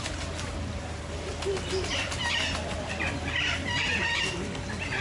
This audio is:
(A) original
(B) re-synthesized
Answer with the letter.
A